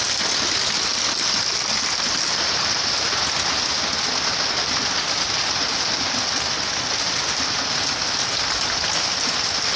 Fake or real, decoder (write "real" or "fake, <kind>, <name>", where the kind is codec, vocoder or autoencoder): real